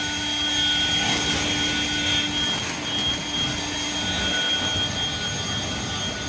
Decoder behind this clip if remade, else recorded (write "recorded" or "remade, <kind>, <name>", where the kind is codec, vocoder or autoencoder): recorded